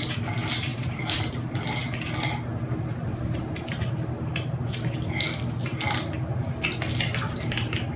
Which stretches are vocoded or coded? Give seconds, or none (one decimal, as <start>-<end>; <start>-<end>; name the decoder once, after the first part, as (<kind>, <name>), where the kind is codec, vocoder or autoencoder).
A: 0.7-1.3 (vocoder, BigVGAN v2)